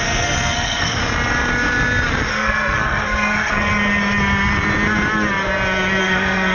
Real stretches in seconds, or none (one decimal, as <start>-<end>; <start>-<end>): 1.0-2.3; 3.7-6.0